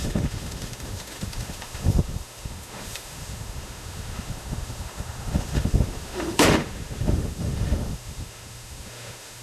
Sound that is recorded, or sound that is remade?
remade